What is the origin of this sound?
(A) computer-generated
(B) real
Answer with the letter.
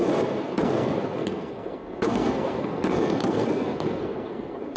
A